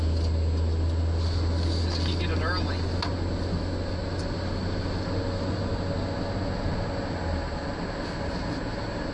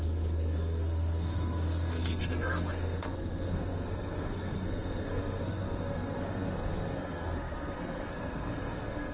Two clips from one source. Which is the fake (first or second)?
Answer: second